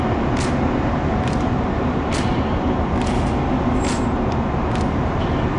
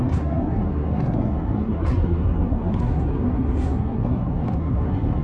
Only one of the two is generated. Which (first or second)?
second